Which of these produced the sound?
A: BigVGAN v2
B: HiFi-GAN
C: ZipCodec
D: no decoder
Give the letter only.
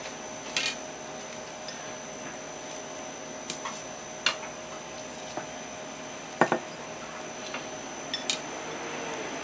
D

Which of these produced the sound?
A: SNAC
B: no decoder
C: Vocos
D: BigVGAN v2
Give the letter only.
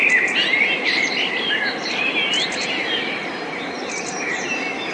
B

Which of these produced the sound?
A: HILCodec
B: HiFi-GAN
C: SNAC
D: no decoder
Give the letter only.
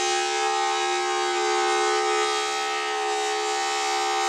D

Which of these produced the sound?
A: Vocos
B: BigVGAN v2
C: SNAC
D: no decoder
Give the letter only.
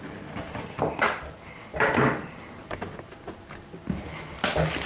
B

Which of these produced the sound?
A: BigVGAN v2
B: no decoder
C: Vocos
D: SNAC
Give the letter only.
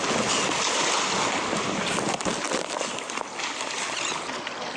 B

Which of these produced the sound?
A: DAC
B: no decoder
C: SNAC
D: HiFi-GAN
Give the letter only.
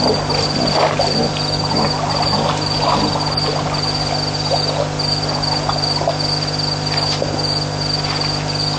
B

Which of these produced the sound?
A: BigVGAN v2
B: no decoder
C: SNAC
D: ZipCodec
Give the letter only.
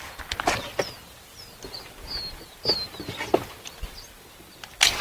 B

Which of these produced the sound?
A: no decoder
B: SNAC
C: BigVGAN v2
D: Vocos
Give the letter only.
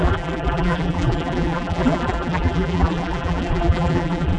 C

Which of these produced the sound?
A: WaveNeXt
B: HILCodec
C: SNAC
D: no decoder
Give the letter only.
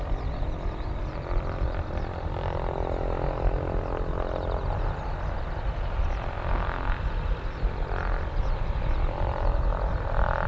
D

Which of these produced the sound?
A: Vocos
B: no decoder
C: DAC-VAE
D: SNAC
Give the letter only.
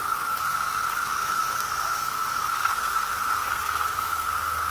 D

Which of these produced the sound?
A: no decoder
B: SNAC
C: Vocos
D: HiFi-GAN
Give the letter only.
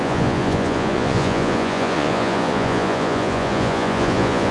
C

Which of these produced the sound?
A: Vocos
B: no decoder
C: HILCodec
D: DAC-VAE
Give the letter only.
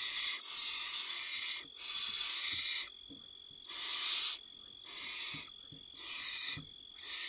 B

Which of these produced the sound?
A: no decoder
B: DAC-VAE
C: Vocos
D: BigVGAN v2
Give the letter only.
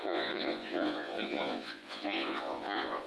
C